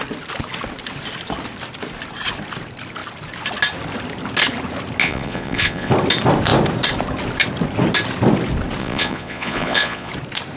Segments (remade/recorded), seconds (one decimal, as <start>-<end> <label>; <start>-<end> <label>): 0.0-5.0 recorded; 5.0-5.9 remade; 5.9-8.8 recorded; 8.8-10.1 remade; 10.1-10.6 recorded